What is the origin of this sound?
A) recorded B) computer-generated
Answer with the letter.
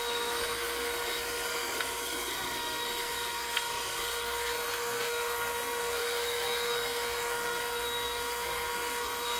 B